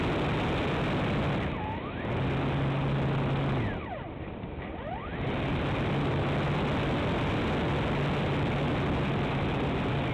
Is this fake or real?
real